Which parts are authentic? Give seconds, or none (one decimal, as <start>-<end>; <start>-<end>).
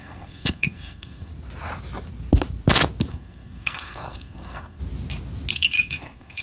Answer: 1.3-3.1; 4.8-5.5